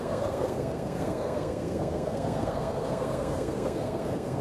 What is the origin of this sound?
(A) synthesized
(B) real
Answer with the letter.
A